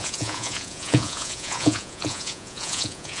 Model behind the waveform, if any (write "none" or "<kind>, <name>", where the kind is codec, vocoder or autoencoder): vocoder, Vocos